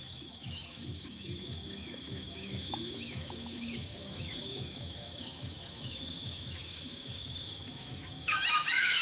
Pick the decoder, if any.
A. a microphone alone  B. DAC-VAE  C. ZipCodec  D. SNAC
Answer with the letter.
B